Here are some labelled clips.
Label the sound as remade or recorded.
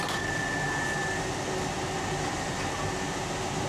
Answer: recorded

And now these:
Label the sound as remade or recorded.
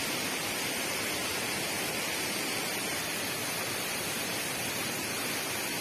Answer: remade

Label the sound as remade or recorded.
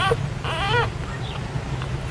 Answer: recorded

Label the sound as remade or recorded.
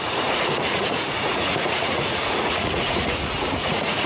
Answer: remade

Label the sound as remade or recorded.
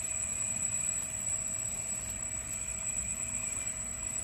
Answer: recorded